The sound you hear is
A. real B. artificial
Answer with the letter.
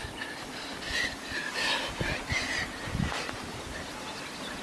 A